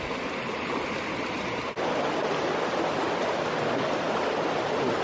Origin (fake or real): real